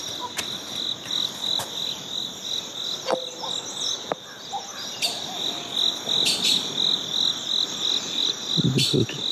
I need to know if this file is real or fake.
real